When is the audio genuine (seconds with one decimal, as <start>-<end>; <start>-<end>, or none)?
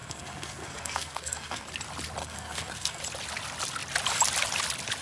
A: 1.7-2.2; 3.0-5.0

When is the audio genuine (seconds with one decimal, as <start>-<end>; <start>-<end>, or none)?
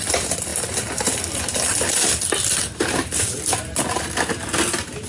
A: 0.0-5.1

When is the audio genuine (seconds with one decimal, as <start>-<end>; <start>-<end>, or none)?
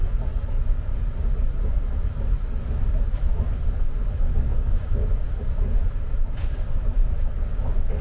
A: 0.0-4.3; 5.2-8.0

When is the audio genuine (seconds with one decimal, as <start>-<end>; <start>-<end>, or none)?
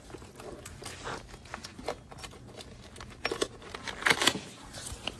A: 0.0-5.2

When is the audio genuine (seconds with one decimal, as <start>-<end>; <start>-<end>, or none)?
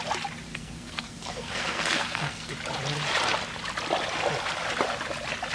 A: 0.0-0.5; 2.5-5.5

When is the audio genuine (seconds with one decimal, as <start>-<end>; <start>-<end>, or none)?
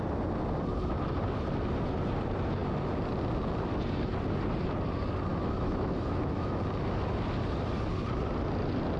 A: 0.0-5.3; 6.6-9.0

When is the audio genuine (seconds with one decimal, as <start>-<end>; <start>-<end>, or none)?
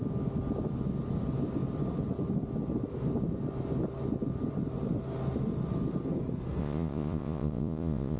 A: 0.0-6.6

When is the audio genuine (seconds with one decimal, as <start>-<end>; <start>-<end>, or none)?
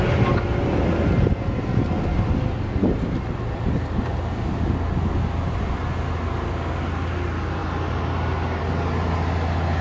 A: 0.0-9.8